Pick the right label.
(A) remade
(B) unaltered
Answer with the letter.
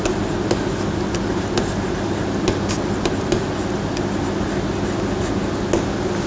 B